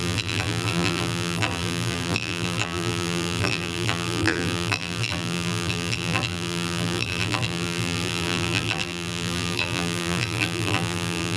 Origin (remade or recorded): remade